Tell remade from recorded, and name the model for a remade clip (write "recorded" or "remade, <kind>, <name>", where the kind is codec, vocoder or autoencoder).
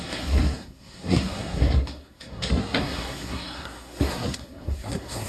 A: remade, codec, SNAC